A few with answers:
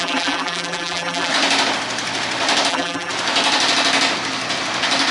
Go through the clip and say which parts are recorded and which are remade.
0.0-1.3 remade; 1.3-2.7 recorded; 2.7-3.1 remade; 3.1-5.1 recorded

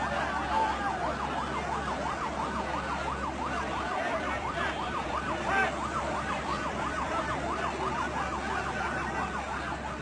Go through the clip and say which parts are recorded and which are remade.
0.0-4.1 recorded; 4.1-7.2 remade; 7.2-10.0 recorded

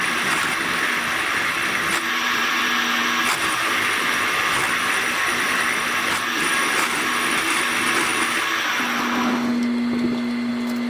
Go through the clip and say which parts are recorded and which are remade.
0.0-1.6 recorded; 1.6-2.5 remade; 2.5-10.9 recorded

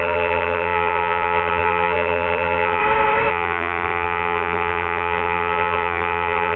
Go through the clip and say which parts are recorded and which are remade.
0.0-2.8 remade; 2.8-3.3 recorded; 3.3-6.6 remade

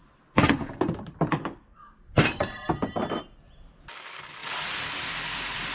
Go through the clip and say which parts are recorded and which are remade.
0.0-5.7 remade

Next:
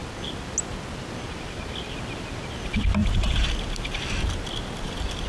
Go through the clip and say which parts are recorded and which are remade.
0.0-3.0 recorded; 3.0-3.5 remade; 3.5-5.3 recorded

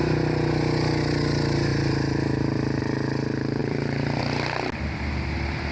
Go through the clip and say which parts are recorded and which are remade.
0.0-1.7 recorded; 1.7-2.8 remade; 2.8-3.6 recorded; 3.6-4.2 remade; 4.2-5.7 recorded

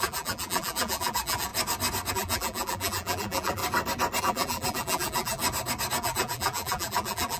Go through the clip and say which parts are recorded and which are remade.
0.0-1.5 remade; 1.5-2.1 recorded; 2.1-3.6 remade; 3.6-4.2 recorded; 4.2-5.4 remade; 5.4-6.0 recorded; 6.0-7.4 remade